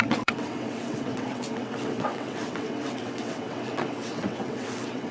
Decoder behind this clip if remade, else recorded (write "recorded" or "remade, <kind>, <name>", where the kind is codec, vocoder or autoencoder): remade, vocoder, WaveNeXt